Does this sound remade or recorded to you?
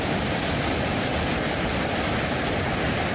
recorded